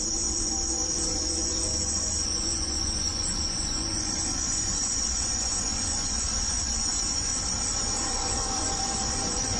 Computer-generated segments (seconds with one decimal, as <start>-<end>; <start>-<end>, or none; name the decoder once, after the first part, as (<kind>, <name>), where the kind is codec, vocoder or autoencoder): 0.0-7.3 (vocoder, Vocos); 8.0-9.6